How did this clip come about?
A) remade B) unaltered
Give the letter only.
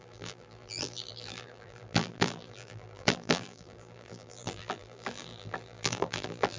A